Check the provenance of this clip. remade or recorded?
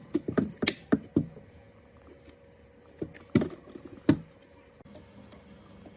recorded